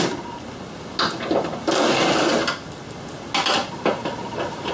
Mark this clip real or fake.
real